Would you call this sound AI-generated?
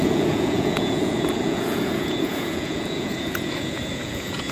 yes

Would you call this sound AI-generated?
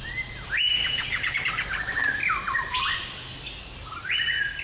no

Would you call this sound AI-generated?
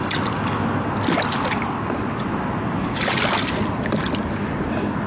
no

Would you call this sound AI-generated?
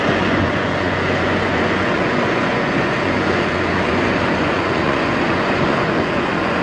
yes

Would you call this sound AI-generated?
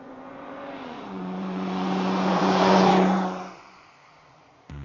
yes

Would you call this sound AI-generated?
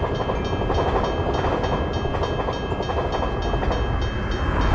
no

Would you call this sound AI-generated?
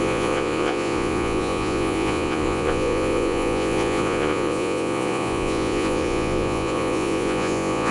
yes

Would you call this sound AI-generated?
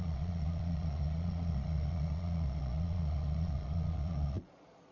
yes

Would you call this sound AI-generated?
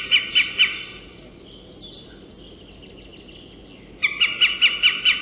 no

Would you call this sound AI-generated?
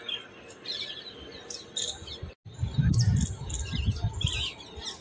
no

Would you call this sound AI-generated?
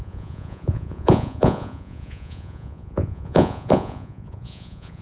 yes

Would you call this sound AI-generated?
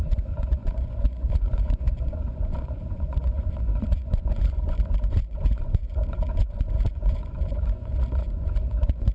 yes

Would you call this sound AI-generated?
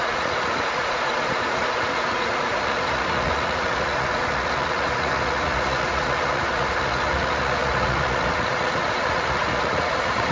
yes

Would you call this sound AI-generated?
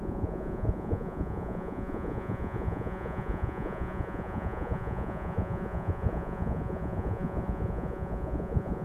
yes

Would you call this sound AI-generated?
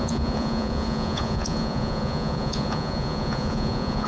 yes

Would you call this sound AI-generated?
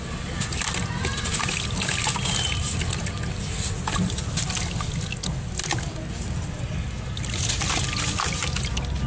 no